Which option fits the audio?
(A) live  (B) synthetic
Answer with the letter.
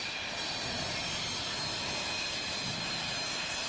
A